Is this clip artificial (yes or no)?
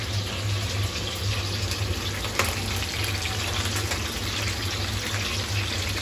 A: no